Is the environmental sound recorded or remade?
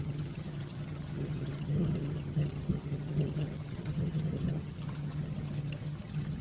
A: remade